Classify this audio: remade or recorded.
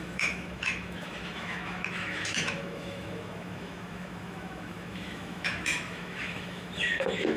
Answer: remade